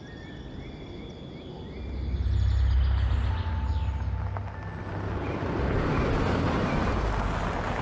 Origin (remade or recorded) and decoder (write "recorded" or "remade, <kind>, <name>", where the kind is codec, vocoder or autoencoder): recorded